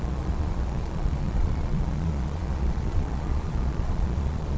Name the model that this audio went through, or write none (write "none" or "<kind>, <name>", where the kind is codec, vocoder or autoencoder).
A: vocoder, Vocos